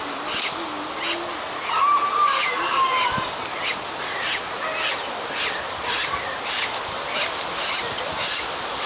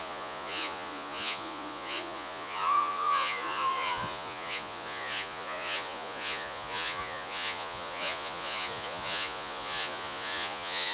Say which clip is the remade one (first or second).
second